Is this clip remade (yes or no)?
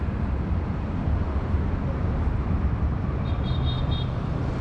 no